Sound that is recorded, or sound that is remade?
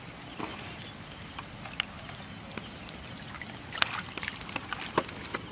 recorded